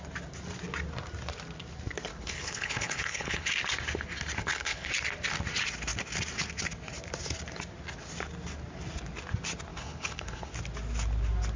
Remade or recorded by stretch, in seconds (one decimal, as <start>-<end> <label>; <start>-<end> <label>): 0.0-2.1 recorded; 2.1-3.5 remade; 3.5-4.4 recorded; 4.4-4.9 remade; 4.9-9.7 recorded; 9.7-10.5 remade; 10.5-11.6 recorded